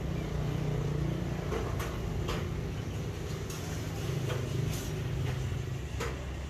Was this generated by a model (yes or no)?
no